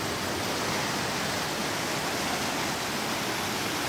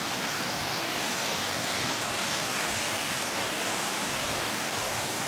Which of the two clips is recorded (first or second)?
first